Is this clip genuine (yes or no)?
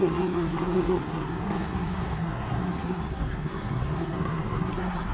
no